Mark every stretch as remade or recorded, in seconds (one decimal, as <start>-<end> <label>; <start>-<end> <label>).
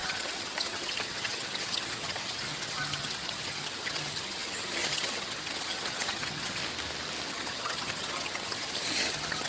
0.0-6.6 remade; 6.6-7.3 recorded; 7.3-9.5 remade